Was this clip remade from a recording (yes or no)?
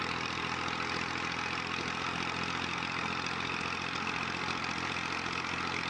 no